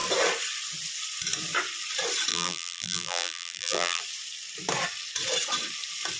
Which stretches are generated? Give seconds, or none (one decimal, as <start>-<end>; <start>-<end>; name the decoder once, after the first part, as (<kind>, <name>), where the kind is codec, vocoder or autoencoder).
2.3-4.0 (vocoder, BigVGAN v2)

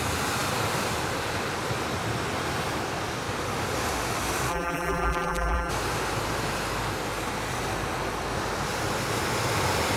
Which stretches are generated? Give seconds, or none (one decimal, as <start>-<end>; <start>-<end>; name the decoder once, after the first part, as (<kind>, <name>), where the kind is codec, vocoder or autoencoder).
4.5-5.7 (vocoder, BigVGAN v2)

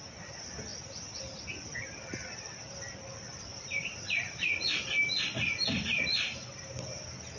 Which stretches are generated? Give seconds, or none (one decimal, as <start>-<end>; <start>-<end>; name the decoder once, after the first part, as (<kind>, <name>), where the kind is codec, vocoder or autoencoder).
0.7-1.2 (vocoder, BigVGAN v2); 3.3-6.7

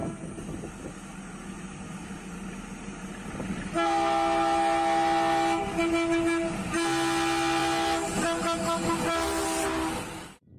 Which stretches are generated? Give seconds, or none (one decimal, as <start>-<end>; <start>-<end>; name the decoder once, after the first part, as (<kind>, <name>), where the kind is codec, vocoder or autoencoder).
none

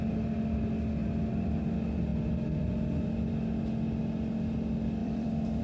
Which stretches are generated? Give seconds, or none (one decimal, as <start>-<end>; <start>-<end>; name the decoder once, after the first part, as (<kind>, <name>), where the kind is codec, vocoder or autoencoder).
1.0-1.5 (vocoder, BigVGAN v2); 5.0-5.6

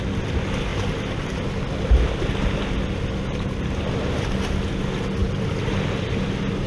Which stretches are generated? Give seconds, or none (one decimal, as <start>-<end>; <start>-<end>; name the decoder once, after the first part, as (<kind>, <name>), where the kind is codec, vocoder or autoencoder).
5.2-6.7 (vocoder, BigVGAN v2)

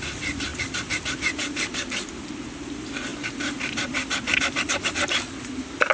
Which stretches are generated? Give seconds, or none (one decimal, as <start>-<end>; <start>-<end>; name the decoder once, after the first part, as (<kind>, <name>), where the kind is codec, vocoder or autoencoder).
0.5-2.1 (vocoder, BigVGAN v2)